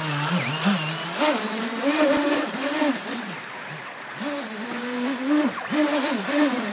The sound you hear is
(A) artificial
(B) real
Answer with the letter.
B